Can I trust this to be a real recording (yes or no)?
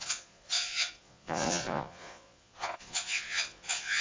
no